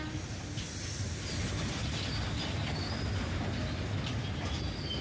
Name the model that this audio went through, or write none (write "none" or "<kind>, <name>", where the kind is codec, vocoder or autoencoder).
none